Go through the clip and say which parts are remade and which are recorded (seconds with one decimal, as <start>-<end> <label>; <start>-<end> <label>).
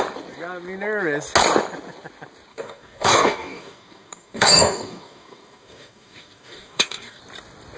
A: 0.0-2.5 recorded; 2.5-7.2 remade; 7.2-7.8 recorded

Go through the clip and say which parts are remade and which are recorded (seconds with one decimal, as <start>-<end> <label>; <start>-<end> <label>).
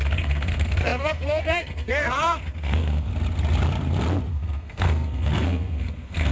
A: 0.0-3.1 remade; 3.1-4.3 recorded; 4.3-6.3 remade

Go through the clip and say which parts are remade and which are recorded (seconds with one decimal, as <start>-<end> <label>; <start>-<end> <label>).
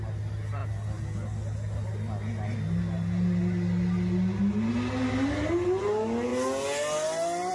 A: 0.0-7.5 recorded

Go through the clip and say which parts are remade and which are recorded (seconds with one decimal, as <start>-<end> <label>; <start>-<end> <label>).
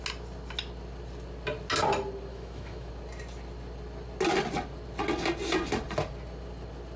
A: 0.0-2.3 recorded; 2.3-2.9 remade; 2.9-7.0 recorded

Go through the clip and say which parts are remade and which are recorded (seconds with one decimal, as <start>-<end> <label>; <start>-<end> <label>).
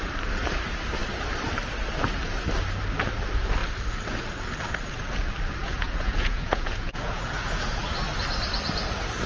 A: 0.0-5.6 recorded; 5.6-7.8 remade; 7.8-9.3 recorded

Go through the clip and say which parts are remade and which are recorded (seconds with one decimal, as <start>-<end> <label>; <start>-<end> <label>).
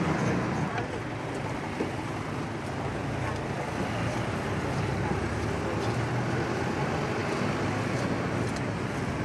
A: 0.0-9.2 recorded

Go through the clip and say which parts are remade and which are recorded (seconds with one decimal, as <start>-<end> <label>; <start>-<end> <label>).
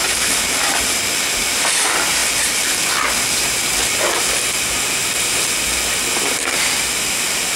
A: 0.0-2.2 recorded; 2.2-6.8 remade; 6.8-7.6 recorded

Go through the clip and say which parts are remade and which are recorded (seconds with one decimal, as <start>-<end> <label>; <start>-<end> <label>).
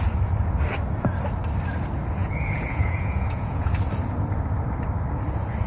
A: 0.0-2.2 recorded; 2.2-3.7 remade; 3.7-5.7 recorded